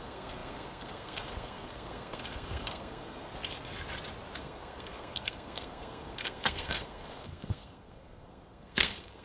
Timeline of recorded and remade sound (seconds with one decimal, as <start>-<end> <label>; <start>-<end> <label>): 0.0-3.3 remade; 3.3-4.4 recorded; 4.4-9.2 remade